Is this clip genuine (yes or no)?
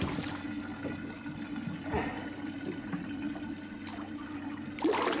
yes